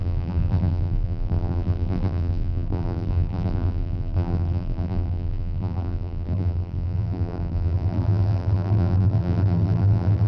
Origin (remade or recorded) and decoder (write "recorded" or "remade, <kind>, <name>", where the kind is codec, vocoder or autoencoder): remade, vocoder, BigVGAN v2